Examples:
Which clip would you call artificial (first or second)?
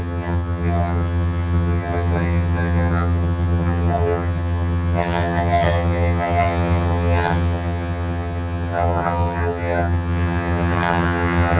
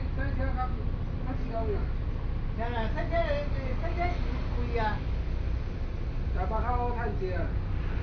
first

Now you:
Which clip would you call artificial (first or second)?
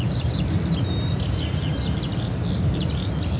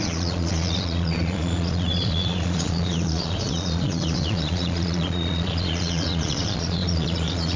second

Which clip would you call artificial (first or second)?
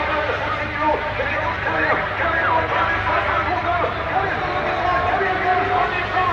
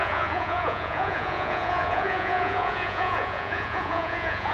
second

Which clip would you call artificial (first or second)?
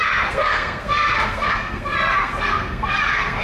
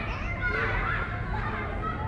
first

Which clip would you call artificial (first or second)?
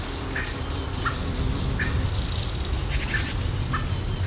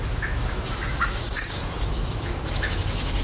second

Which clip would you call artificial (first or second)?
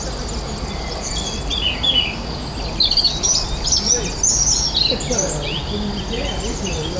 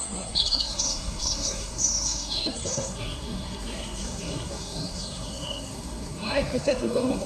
second